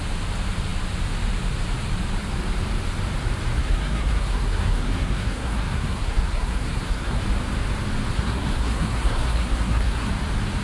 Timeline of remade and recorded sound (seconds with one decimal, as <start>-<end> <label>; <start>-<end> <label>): 0.0-3.6 recorded; 3.6-7.2 remade; 7.2-8.1 recorded; 8.1-10.1 remade; 10.1-10.6 recorded